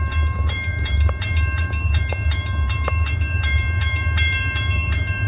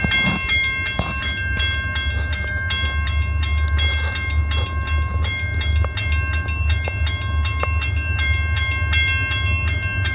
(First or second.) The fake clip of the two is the first